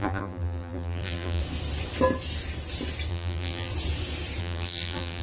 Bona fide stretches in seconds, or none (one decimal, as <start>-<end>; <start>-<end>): 1.4-3.1; 3.7-4.4